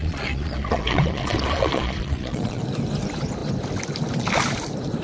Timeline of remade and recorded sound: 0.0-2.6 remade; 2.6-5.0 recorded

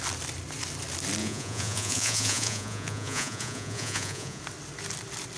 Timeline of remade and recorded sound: 0.0-1.2 recorded; 1.2-4.4 remade; 4.4-5.4 recorded

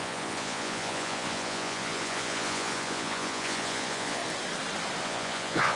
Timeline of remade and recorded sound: 0.0-4.2 remade; 4.2-5.0 recorded; 5.0-5.8 remade